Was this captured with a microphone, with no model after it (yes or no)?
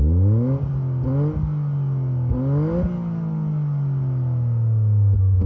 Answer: yes